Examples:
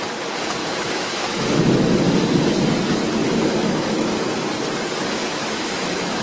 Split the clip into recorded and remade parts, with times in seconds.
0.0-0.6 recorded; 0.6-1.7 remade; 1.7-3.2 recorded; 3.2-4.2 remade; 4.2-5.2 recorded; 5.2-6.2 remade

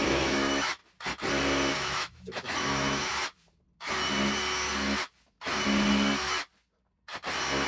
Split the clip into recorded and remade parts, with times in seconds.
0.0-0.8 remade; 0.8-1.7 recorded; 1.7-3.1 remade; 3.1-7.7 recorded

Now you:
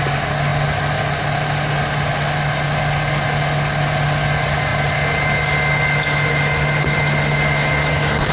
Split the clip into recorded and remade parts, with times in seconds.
0.0-8.3 recorded